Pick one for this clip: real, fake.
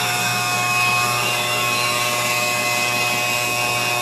fake